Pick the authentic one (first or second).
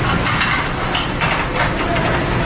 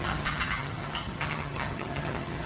first